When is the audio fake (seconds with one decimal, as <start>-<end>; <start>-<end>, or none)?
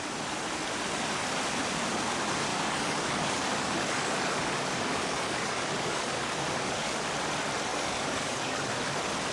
2.5-7.0; 7.7-8.7